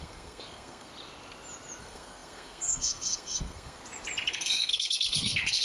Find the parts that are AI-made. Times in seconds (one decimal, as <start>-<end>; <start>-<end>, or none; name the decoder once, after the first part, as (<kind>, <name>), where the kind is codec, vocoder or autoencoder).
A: 0.0-0.9 (codec, SNAC); 1.8-3.8; 4.3-5.6